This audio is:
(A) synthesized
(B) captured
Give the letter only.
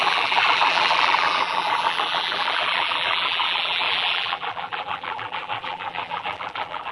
A